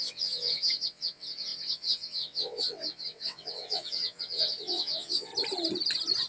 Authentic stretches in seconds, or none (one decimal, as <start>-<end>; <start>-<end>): 5.3-6.3